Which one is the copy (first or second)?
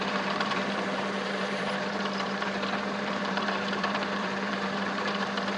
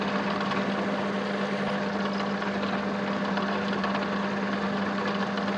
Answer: first